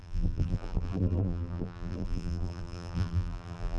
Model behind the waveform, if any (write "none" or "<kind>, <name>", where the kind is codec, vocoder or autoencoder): vocoder, BigVGAN v2